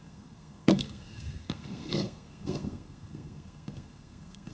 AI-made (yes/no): yes